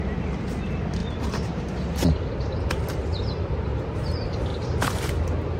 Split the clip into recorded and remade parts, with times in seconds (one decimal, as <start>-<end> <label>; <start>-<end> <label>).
0.0-1.0 recorded; 1.0-1.7 remade; 1.7-3.1 recorded; 3.1-4.0 remade; 4.0-4.5 recorded; 4.5-5.0 remade; 5.0-5.6 recorded